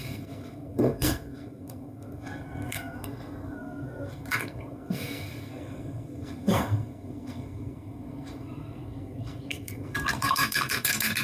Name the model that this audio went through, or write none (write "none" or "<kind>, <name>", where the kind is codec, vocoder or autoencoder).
codec, SNAC